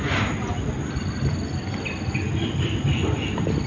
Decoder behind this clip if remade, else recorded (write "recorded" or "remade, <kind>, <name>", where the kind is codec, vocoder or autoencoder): recorded